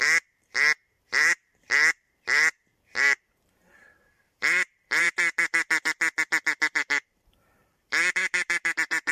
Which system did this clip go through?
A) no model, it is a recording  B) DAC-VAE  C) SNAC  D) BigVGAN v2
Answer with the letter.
D